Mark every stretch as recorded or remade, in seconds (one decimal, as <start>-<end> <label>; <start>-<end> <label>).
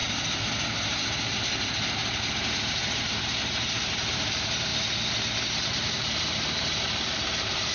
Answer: 0.0-4.7 remade; 4.7-5.5 recorded; 5.5-7.7 remade